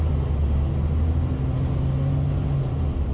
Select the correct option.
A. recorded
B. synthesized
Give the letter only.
A